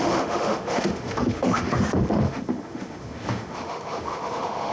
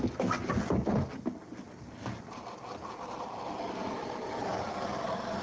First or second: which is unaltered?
second